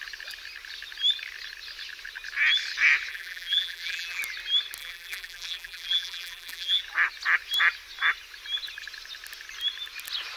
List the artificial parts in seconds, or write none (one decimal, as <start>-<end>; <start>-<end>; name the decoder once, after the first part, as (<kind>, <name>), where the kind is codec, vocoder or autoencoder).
3.1-4.2 (vocoder, BigVGAN v2); 4.8-6.8